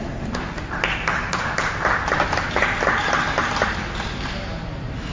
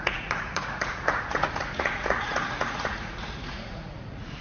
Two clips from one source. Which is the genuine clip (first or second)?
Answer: first